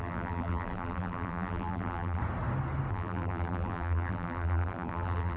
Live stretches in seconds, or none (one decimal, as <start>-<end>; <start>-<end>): 2.2-2.9